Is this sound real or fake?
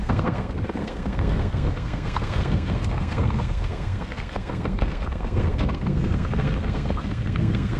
fake